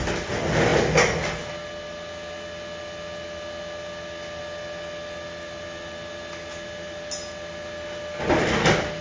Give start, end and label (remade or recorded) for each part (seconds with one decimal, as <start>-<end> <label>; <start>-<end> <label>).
0.0-9.0 recorded